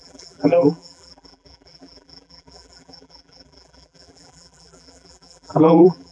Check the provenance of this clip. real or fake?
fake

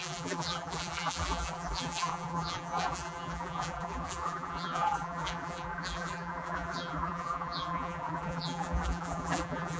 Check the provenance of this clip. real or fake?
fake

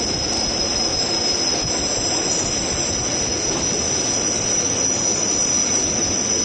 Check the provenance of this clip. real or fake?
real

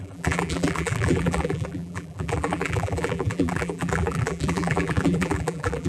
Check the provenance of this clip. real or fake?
fake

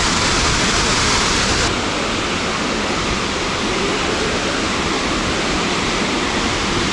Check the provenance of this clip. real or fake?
real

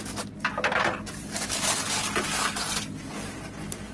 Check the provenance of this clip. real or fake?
real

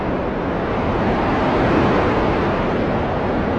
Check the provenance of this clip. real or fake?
real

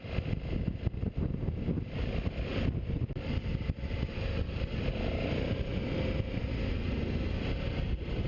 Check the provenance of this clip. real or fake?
real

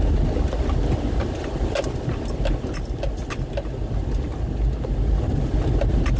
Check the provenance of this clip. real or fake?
real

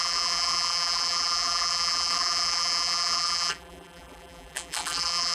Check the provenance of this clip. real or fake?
fake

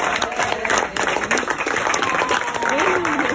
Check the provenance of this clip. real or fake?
fake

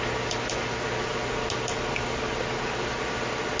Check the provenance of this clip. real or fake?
real